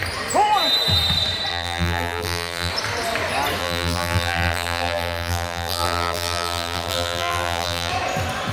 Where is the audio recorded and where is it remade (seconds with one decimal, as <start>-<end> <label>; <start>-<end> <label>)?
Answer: 0.0-1.5 recorded; 1.5-2.7 remade; 2.7-3.6 recorded; 3.6-7.9 remade; 7.9-8.5 recorded